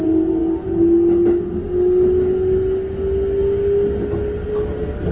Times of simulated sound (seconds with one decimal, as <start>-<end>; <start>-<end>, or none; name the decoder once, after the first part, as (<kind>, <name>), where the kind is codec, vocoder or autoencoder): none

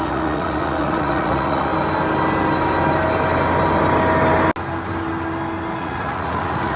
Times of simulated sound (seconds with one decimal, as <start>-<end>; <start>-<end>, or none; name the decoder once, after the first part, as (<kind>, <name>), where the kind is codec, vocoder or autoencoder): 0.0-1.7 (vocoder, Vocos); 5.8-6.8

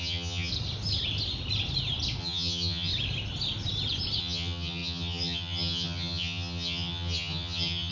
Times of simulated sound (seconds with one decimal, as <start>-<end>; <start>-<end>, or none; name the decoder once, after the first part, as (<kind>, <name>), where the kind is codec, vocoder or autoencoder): 0.0-0.5 (vocoder, HiFi-GAN); 2.2-2.9; 4.2-7.9